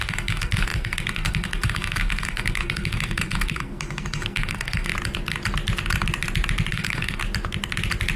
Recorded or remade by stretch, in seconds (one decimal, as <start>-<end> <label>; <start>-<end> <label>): 0.0-4.9 remade; 4.9-6.7 recorded; 6.7-7.2 remade; 7.2-8.2 recorded